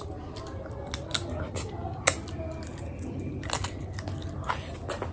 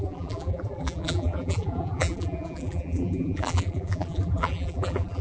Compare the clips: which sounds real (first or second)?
first